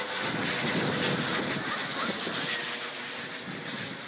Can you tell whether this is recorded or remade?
recorded